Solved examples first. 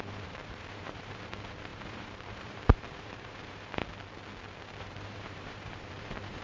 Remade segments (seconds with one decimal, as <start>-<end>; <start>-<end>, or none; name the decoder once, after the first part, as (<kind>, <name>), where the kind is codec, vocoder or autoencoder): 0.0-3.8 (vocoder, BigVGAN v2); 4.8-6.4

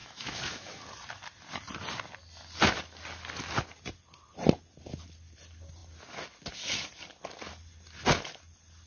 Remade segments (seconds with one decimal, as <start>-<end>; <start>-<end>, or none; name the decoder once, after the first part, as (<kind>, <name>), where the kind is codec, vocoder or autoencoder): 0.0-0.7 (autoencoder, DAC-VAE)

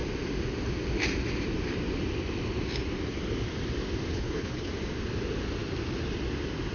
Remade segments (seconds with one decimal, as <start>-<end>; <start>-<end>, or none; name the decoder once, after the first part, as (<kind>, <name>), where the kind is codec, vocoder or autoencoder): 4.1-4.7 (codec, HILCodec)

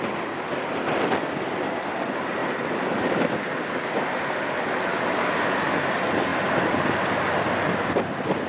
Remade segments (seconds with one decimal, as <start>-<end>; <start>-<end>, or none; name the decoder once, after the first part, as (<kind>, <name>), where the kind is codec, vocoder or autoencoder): none

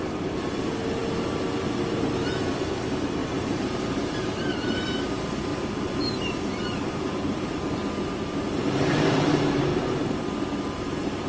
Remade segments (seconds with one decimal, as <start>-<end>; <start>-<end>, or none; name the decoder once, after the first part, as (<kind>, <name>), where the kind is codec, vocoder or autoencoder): 3.2-4.9 (vocoder, BigVGAN v2); 5.5-7.8